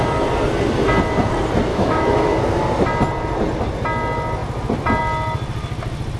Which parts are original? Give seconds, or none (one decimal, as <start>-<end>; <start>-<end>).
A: 0.0-1.7; 2.4-6.2